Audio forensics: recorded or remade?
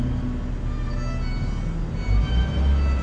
recorded